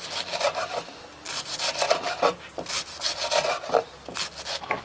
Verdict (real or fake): real